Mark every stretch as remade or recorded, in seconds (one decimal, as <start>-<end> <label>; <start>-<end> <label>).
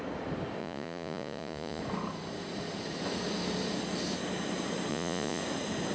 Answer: 0.0-0.6 recorded; 0.6-1.8 remade; 1.8-4.9 recorded; 4.9-5.4 remade; 5.4-5.9 recorded